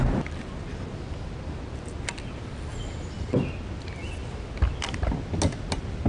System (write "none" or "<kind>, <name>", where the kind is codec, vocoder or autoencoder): none